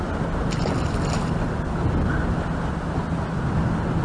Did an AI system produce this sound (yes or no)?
no